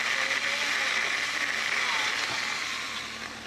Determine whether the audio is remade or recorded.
recorded